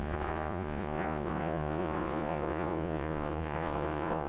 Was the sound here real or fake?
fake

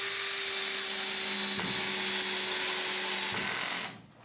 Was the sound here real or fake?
real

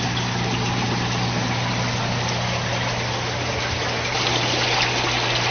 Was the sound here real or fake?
real